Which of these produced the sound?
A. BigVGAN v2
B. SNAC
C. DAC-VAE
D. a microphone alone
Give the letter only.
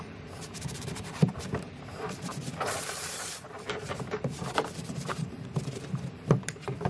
A